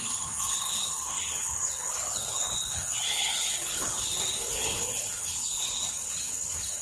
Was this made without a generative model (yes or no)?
no